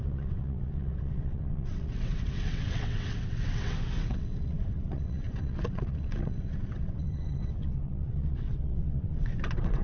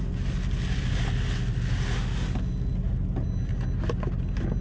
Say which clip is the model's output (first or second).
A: first